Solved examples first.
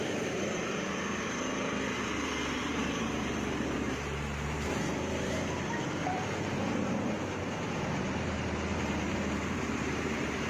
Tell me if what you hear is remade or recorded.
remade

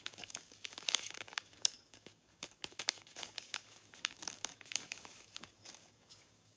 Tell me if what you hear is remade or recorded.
remade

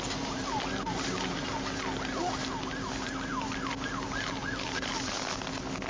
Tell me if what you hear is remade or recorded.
recorded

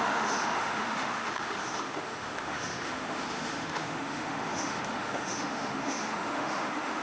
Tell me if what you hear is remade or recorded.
remade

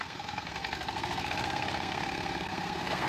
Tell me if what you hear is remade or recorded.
remade